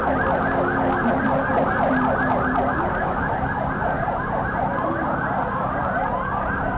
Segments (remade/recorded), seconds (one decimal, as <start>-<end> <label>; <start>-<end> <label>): 0.0-6.8 recorded

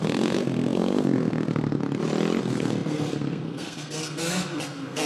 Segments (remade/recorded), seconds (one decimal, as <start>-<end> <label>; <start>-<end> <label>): 0.0-1.8 remade; 1.8-2.4 recorded; 2.4-5.1 remade

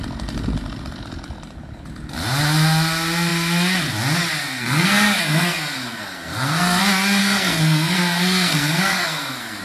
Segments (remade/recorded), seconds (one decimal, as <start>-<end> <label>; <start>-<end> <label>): 0.0-4.4 recorded; 4.4-6.8 remade; 6.8-7.2 recorded; 7.2-9.6 remade

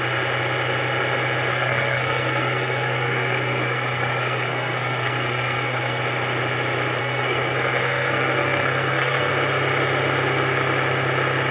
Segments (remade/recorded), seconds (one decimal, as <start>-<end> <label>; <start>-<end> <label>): 0.0-1.5 recorded; 1.5-6.0 remade; 6.0-7.0 recorded; 7.0-9.3 remade; 9.3-11.5 recorded